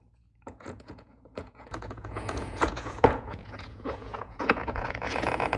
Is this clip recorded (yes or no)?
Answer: no